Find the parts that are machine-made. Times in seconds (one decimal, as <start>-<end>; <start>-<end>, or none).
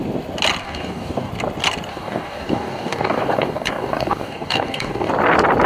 0.6-1.3; 1.9-5.1